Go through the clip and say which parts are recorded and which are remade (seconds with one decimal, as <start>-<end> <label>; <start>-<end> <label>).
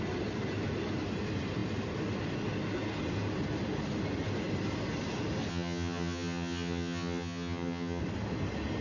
0.0-5.5 recorded; 5.5-8.0 remade; 8.0-8.8 recorded